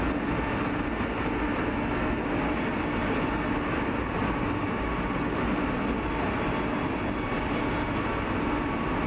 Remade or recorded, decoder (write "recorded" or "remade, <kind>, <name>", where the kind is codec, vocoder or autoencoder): recorded